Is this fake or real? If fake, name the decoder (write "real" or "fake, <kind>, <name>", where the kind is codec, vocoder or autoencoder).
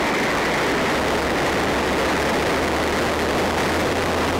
real